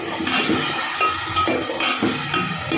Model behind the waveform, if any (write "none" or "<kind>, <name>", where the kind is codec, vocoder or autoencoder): none